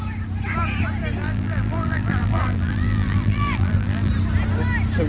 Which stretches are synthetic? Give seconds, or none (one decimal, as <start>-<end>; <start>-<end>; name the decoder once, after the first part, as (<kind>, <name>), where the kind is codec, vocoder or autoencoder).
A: 1.2-4.1 (vocoder, BigVGAN v2)